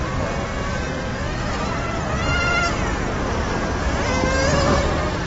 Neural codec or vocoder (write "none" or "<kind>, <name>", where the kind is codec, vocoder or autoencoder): none